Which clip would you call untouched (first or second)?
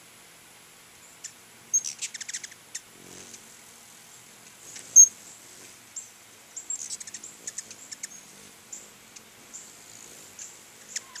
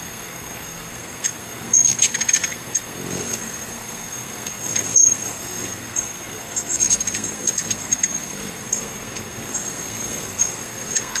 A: first